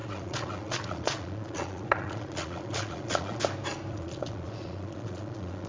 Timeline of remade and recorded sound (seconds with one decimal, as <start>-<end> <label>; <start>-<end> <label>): 0.0-3.4 remade; 3.4-3.9 recorded; 3.9-5.7 remade